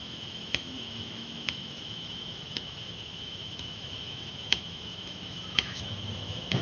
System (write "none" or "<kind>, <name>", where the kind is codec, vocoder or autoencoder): autoencoder, DAC-VAE